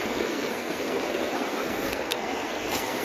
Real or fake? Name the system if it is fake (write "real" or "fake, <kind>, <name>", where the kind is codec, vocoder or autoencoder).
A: fake, codec, SNAC